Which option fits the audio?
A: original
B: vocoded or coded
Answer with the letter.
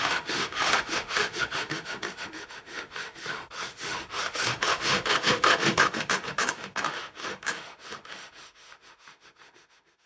B